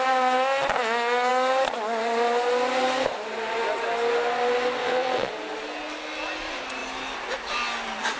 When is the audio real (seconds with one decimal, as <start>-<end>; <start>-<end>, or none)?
0.0-4.8; 5.3-8.2